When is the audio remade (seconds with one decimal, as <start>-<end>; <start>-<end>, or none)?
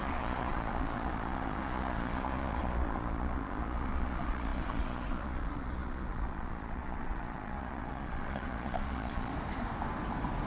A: 0.0-9.3